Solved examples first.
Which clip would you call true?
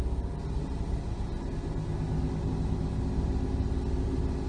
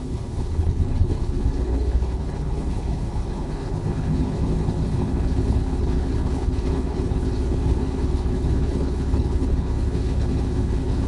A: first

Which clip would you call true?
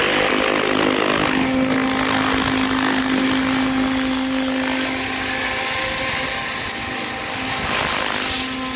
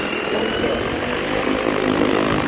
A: first